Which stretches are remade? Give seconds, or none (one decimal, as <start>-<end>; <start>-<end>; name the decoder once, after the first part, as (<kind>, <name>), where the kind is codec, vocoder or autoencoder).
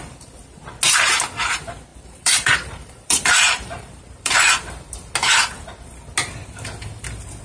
1.9-4.3 (vocoder, BigVGAN v2)